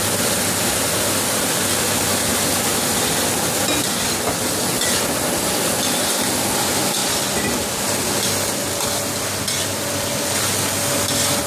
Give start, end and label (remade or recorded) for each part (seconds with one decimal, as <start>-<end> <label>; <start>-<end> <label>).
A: 0.0-11.5 recorded